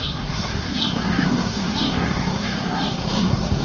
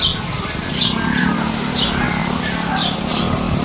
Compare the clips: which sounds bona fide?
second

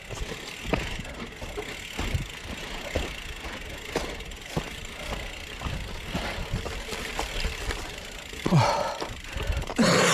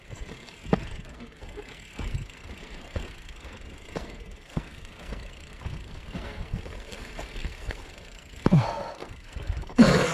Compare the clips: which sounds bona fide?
first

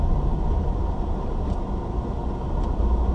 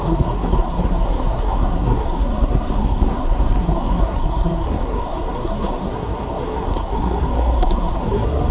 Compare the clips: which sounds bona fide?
first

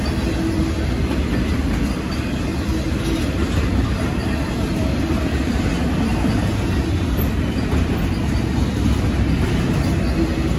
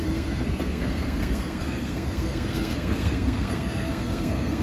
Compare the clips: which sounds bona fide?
first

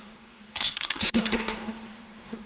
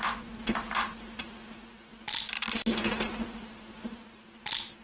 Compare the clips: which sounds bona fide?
second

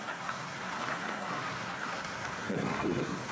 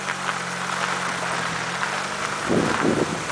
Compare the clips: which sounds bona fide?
second